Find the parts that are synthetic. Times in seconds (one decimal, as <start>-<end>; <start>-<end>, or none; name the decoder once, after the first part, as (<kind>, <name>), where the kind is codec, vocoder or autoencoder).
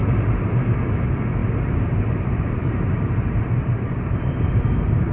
0.0-0.6 (vocoder, BigVGAN v2); 1.4-4.5